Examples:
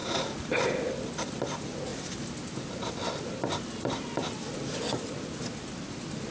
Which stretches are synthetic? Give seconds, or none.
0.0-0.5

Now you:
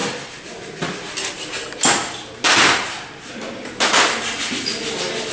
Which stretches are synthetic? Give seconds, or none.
none

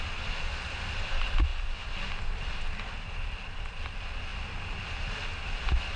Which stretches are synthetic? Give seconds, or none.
none

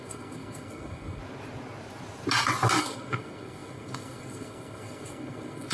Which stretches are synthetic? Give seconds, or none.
0.0-1.2; 2.8-5.7

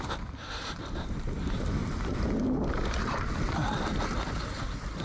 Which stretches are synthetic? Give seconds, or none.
0.0-1.8

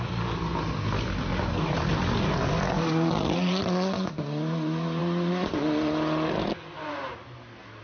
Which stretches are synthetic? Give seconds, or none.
none

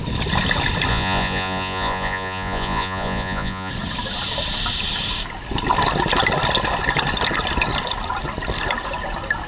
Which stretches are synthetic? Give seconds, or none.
0.9-3.7